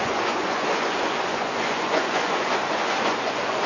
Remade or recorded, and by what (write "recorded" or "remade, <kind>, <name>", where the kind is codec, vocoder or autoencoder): remade, vocoder, Vocos